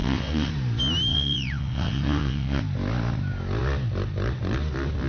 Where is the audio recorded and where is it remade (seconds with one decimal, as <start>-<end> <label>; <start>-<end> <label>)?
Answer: 0.0-0.5 remade; 0.5-1.1 recorded; 1.1-2.6 remade; 2.6-5.1 recorded